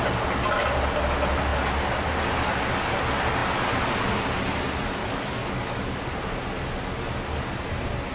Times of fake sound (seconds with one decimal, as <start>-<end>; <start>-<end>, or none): 5.0-6.1